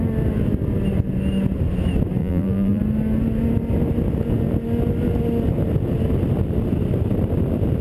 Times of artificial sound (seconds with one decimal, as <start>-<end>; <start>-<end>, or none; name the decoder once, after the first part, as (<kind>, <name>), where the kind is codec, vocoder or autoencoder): 2.2-2.8 (vocoder, BigVGAN v2)